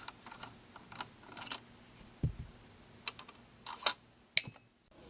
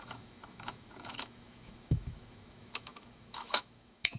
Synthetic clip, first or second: second